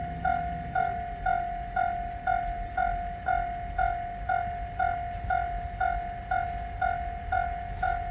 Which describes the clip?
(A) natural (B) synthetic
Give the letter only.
A